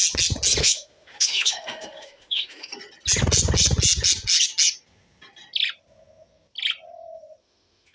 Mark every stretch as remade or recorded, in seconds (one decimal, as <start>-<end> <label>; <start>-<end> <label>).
0.0-0.6 recorded; 0.6-2.7 remade; 2.7-7.4 recorded; 7.4-7.9 remade